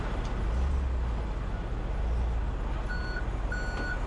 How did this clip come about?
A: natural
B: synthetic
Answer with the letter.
A